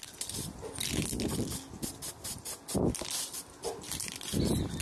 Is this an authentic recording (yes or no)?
yes